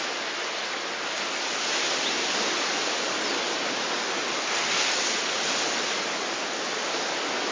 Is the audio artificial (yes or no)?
no